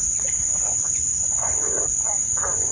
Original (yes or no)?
no